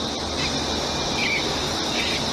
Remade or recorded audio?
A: recorded